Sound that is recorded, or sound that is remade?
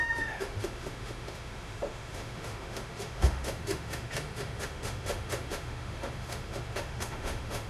remade